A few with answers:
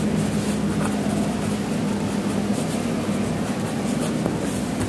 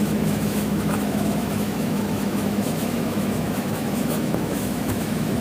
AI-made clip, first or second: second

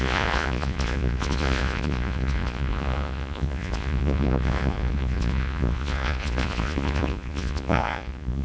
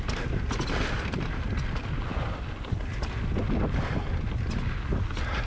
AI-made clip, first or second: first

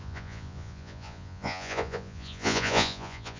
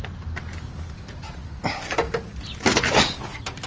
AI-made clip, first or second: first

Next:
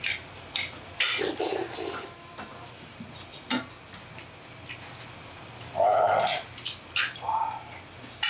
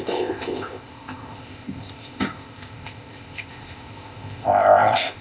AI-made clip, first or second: second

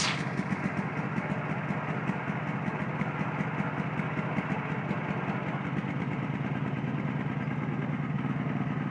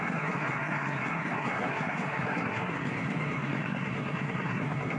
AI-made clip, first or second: second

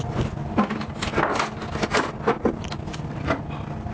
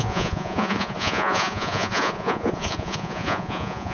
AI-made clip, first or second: second